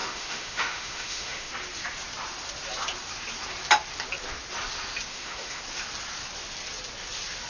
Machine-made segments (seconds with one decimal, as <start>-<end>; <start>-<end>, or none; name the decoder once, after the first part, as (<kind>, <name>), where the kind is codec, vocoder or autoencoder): 0.0-1.5 (autoencoder, DAC-VAE); 5.1-5.6